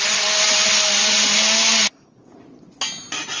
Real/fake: real